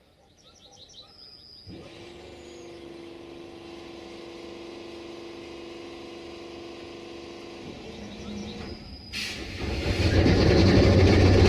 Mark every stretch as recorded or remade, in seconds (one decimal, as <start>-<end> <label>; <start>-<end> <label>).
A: 0.0-8.4 recorded; 8.4-9.9 remade; 9.9-11.5 recorded